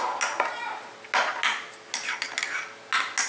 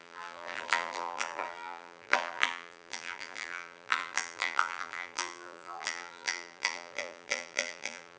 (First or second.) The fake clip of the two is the second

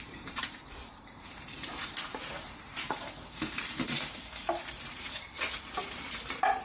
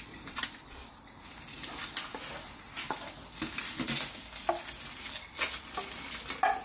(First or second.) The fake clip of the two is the first